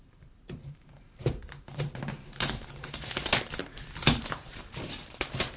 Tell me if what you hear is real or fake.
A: fake